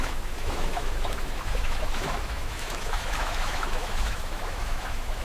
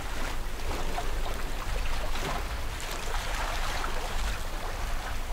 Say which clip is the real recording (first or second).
second